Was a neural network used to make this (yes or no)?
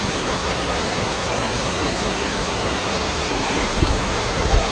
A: yes